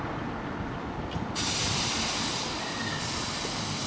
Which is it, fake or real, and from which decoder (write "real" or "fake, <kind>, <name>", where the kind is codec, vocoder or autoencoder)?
real